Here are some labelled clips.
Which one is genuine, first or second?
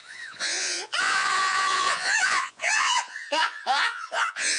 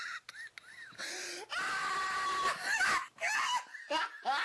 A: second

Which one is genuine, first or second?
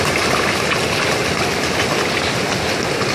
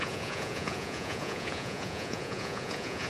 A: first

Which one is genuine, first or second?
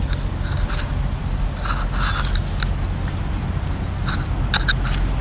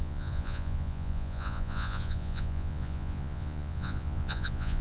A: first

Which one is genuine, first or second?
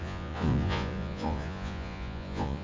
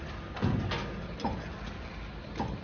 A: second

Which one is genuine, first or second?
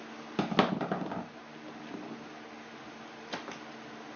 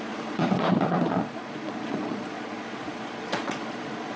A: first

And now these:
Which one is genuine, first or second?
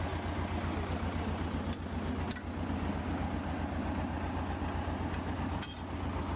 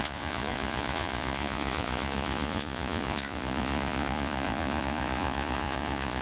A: first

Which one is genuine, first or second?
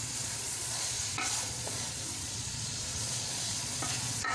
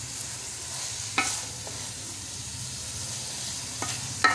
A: second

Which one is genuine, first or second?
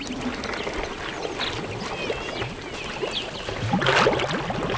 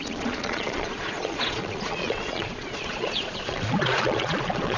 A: first